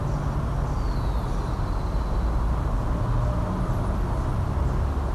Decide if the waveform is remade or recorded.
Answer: recorded